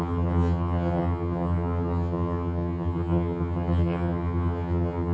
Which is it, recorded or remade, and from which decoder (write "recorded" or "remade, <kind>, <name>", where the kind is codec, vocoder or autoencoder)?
remade, vocoder, HiFi-GAN